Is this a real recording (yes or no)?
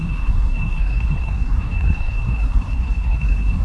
no